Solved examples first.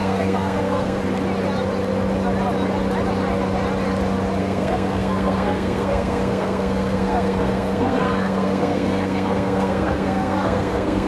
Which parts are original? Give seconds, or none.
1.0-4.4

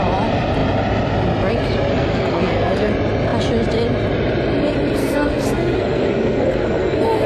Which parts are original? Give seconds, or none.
0.0-1.9; 2.9-5.0